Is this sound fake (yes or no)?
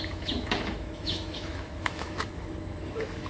yes